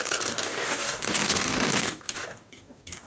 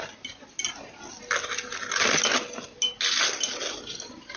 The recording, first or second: second